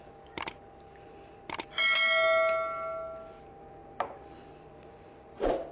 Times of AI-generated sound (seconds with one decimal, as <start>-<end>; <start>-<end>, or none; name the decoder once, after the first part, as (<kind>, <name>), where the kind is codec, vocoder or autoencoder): none